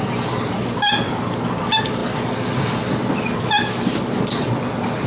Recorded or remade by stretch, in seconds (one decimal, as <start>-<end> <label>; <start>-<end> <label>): 0.0-5.1 recorded